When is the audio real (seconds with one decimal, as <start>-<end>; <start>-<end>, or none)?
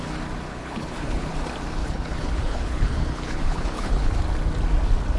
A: 0.0-0.5; 1.3-1.8; 4.1-5.2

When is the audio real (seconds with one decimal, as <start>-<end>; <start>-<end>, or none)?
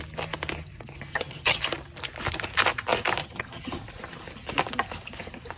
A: 0.0-1.1; 1.6-3.2; 3.8-5.6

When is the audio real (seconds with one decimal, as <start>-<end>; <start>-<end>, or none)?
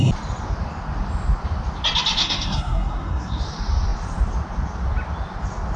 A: 0.0-2.2; 3.4-5.8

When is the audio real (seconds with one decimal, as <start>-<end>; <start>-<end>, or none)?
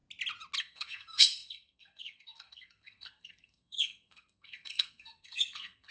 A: 0.0-0.6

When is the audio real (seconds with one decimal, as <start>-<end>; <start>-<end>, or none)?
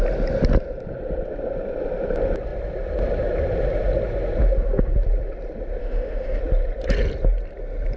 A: 0.0-5.8; 6.4-8.0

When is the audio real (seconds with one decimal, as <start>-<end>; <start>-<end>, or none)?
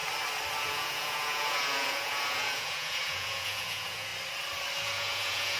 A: 0.0-0.6; 4.1-4.8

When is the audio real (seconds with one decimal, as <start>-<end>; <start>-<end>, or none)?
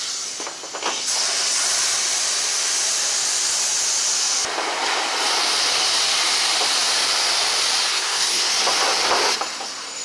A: 0.0-7.9; 8.5-10.0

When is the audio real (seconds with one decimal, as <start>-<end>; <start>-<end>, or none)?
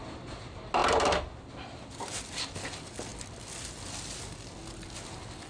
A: 0.0-5.5